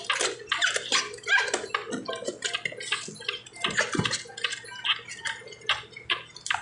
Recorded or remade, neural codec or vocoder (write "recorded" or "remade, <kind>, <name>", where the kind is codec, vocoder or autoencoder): recorded